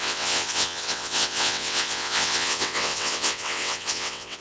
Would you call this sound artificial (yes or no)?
yes